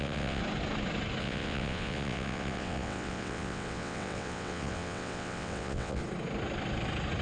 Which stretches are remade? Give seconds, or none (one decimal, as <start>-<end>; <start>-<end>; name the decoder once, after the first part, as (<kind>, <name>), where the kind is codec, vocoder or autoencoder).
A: 0.0-0.4 (vocoder, WaveNeXt); 1.2-6.0